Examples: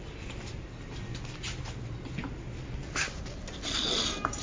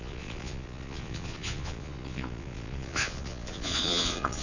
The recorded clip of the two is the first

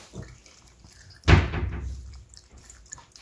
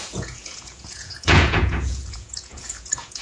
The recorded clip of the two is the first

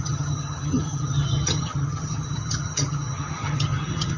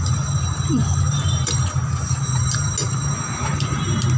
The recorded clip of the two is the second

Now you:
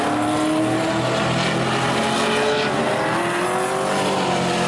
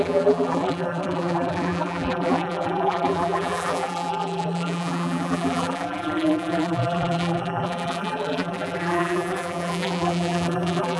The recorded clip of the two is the first